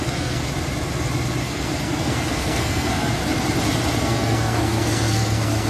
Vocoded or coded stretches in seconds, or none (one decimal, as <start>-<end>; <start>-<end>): 0.0-0.4; 1.4-3.2; 4.0-5.7